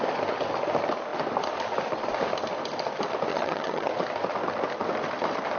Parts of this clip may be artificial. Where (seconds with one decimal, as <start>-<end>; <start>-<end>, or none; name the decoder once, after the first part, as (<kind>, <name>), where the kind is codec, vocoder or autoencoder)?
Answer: 3.3-3.9 (vocoder, HiFi-GAN)